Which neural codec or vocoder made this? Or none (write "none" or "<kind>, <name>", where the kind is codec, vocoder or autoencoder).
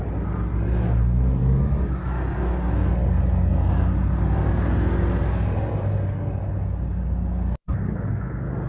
none